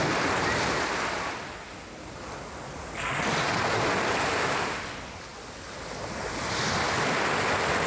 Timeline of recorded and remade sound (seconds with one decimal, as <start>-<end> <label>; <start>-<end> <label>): 0.0-7.9 recorded